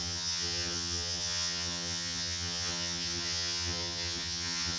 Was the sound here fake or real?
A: fake